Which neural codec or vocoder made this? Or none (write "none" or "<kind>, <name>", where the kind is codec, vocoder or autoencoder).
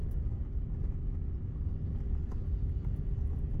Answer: none